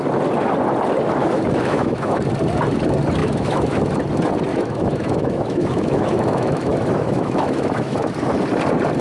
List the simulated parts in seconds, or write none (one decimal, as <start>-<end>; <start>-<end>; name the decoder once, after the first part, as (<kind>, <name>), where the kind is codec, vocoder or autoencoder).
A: 1.2-2.2 (autoencoder, DAC-VAE); 3.2-3.8; 4.5-8.1